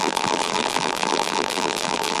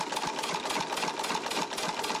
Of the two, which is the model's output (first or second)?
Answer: first